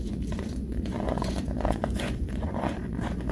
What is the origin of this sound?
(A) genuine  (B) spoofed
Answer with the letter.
B